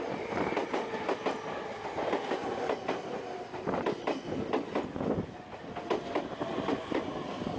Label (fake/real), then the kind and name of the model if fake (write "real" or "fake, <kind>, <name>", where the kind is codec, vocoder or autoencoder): real